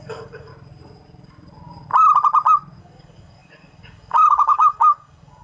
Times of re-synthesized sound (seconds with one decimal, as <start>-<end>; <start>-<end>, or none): 0.0-0.5; 2.8-5.4